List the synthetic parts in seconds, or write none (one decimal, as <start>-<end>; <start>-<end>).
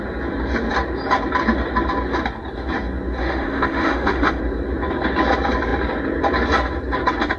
3.2-4.4